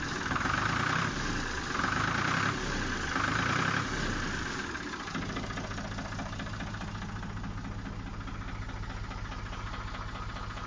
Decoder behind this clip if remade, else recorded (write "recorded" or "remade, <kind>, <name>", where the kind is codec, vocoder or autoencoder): recorded